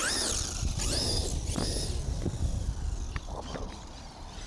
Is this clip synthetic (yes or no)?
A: no